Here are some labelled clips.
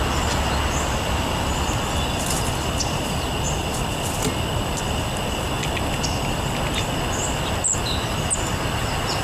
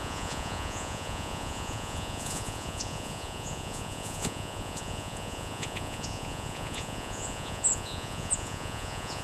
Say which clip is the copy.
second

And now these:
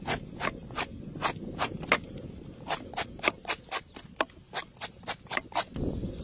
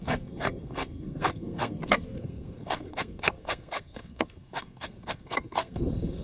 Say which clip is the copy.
second